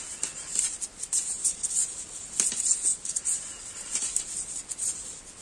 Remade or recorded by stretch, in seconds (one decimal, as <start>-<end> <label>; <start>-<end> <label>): 0.0-1.4 recorded; 1.4-2.3 remade; 2.3-2.9 recorded; 2.9-4.1 remade; 4.1-5.4 recorded